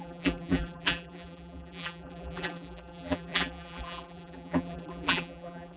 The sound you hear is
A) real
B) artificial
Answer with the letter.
B